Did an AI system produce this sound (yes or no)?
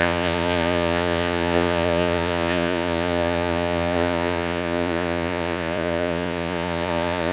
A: yes